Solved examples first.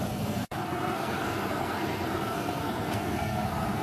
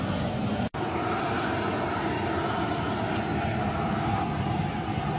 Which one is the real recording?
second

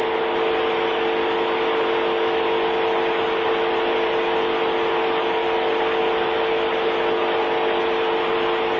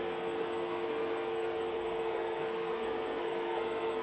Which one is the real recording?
first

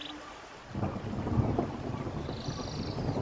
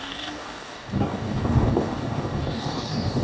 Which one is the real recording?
first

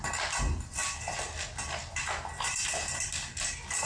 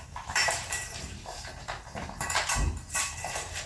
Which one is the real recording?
first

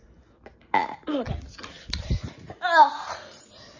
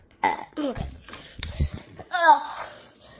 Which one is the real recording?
first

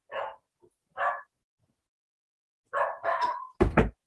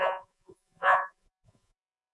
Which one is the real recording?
first